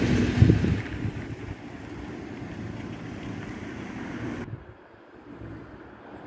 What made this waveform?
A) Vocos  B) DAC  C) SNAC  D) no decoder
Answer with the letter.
D